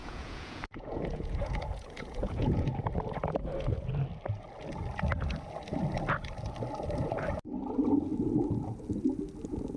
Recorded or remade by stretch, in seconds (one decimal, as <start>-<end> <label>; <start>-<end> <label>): 0.0-2.7 remade; 2.7-9.8 recorded